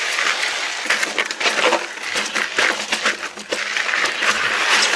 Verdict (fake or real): real